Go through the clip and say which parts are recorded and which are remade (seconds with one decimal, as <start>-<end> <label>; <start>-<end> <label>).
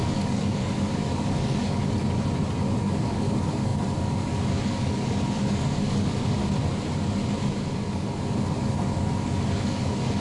0.0-1.8 remade; 1.8-2.8 recorded; 2.8-6.4 remade; 6.4-7.4 recorded; 7.4-10.2 remade